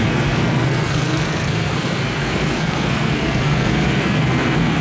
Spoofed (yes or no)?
yes